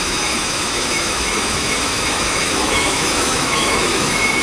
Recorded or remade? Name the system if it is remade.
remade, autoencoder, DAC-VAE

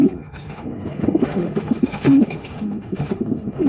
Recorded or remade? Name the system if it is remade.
remade, autoencoder, DAC-VAE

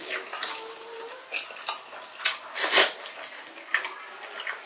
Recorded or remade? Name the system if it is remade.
recorded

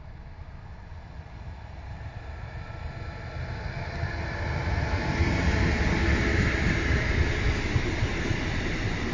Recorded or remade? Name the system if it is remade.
recorded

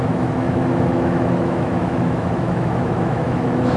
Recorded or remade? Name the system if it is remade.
remade, autoencoder, DAC-VAE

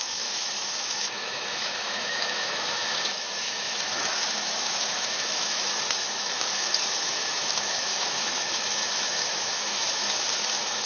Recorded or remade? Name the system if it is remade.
remade, autoencoder, DAC-VAE